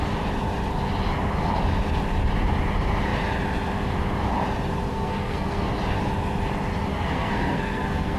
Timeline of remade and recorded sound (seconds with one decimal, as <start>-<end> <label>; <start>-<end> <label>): 0.0-4.9 recorded; 4.9-5.7 remade; 5.7-6.9 recorded; 6.9-8.2 remade